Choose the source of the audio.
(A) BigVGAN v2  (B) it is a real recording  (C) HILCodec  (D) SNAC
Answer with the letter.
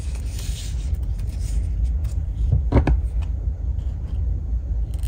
B